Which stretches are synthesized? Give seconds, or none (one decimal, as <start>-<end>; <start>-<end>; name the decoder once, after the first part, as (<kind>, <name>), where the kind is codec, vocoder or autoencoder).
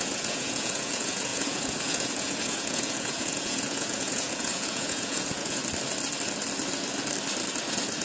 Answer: 0.0-5.6 (vocoder, Vocos)